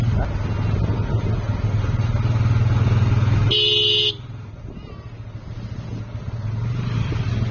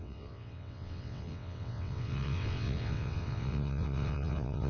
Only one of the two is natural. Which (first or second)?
first